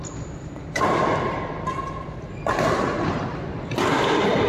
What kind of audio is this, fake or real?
real